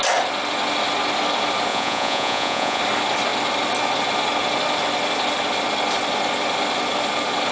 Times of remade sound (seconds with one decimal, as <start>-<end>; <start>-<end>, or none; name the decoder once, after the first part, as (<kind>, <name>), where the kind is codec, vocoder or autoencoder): 1.7-2.8 (vocoder, Vocos)